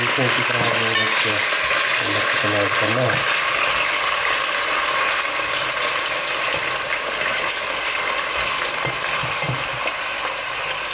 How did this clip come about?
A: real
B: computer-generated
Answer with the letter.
A